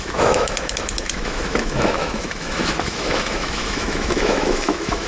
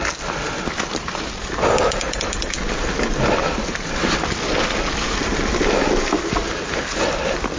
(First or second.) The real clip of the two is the second